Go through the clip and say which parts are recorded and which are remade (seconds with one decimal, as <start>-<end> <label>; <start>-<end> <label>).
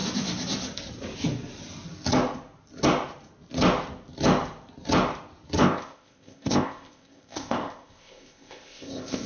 0.0-5.6 recorded; 5.6-9.3 remade